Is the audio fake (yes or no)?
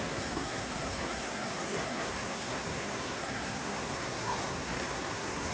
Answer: yes